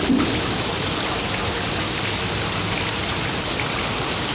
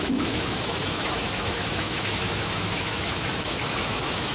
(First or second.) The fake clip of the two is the second